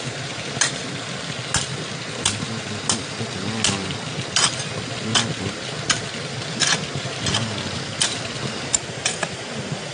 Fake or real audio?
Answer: real